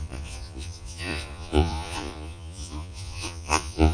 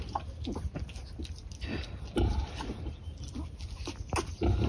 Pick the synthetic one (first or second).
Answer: first